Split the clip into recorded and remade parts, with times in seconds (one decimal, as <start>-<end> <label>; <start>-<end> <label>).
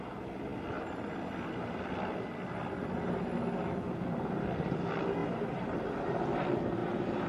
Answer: 0.0-5.2 recorded; 5.2-6.1 remade; 6.1-6.8 recorded; 6.8-7.3 remade